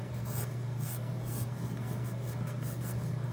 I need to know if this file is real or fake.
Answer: fake